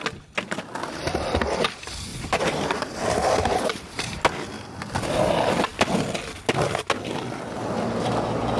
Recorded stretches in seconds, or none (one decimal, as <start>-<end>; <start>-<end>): 0.0-2.1; 4.2-8.6